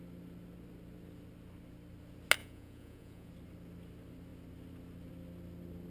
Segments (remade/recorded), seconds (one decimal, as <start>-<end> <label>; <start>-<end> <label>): 0.0-2.4 recorded; 2.4-3.3 remade; 3.3-5.9 recorded